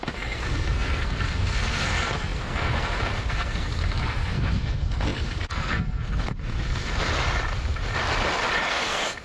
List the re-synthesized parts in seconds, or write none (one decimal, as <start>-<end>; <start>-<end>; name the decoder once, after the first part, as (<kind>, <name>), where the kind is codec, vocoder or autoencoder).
0.0-7.0 (codec, SNAC); 8.7-9.2